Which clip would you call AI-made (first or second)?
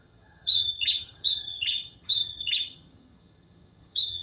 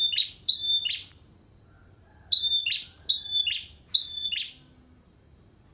first